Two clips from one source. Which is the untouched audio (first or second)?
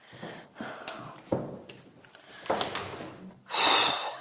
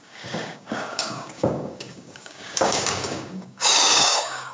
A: first